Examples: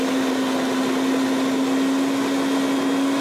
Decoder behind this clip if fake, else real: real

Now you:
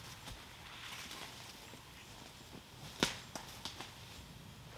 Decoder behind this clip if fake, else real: real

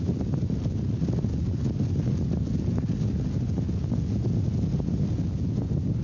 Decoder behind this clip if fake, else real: real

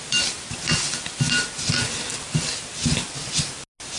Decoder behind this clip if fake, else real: real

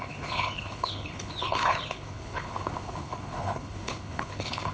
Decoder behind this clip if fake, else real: fake, codec, HILCodec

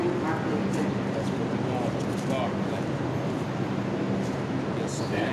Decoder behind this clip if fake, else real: real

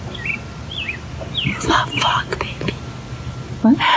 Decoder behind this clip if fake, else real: real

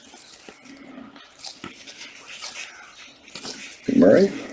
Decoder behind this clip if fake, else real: real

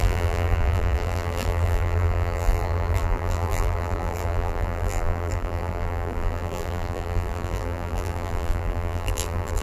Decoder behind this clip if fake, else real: fake, vocoder, BigVGAN v2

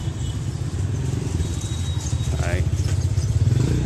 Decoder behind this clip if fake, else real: fake, vocoder, BigVGAN v2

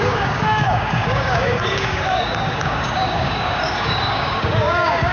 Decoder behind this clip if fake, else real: fake, codec, DAC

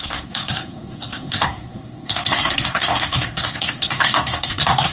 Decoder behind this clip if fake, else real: fake, codec, SNAC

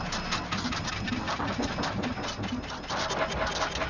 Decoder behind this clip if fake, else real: real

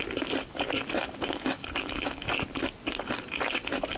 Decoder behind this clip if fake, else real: real